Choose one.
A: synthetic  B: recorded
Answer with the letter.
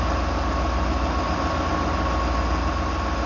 B